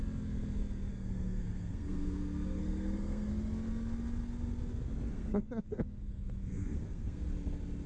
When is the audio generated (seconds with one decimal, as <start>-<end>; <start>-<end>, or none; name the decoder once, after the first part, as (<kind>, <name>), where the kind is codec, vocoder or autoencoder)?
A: 0.9-3.3 (codec, SNAC); 5.1-7.2